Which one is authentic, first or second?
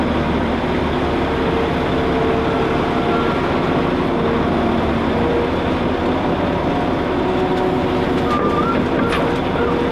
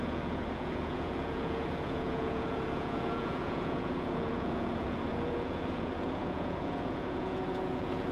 first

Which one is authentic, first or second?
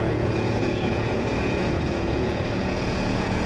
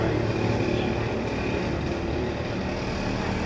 second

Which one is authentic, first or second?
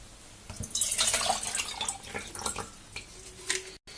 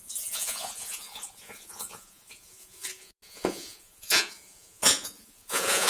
first